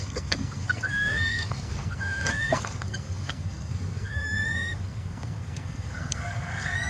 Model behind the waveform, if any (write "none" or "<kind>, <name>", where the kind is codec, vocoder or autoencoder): codec, SNAC